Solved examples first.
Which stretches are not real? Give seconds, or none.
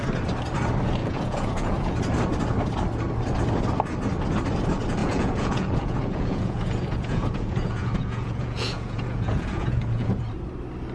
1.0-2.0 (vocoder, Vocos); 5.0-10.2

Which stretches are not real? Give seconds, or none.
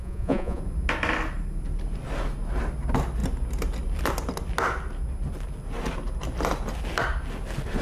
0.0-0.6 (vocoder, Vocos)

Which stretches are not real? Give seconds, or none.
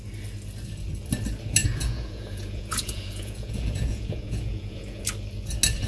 1.6-5.0 (vocoder, Vocos)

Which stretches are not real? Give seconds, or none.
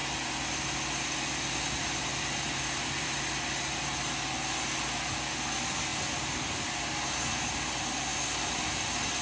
none